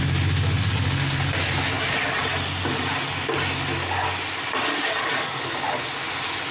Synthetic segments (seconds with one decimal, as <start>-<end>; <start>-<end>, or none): none